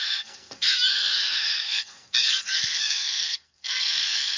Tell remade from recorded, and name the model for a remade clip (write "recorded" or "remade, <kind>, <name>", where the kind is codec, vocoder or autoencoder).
remade, codec, SNAC